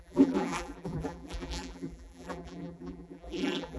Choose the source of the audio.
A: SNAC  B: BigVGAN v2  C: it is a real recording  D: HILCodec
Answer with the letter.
B